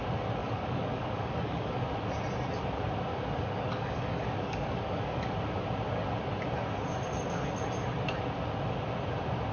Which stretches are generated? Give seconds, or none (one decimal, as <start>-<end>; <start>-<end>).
0.4-1.8; 3.1-5.3